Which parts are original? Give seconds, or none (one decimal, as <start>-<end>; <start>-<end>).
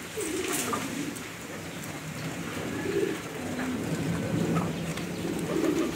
4.9-5.5